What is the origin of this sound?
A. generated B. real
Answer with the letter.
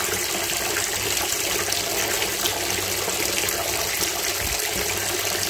B